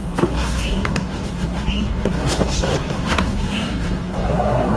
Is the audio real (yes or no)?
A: no